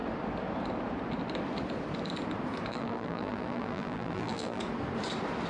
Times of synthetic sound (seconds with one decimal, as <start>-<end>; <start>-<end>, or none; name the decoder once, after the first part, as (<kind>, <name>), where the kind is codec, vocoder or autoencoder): 2.7-4.6 (vocoder, BigVGAN v2)